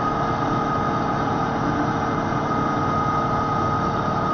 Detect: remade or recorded recorded